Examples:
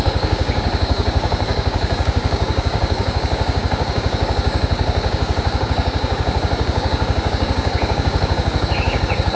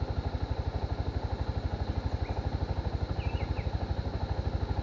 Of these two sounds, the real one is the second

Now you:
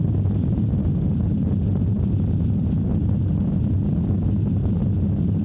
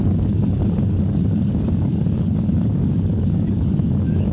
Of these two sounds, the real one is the first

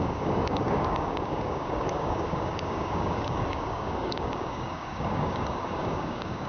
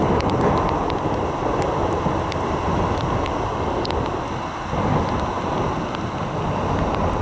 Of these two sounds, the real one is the second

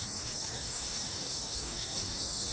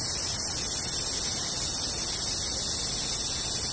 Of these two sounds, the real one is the second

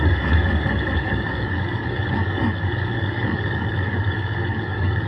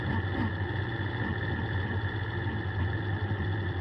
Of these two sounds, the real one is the second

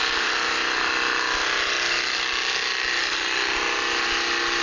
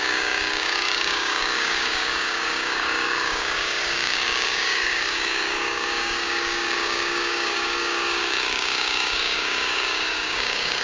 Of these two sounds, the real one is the first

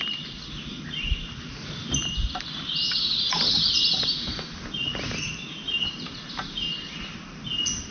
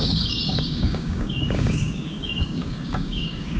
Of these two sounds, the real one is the first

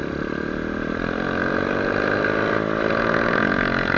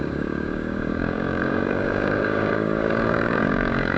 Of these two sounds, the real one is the first